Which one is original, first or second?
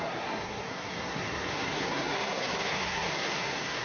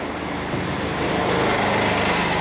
second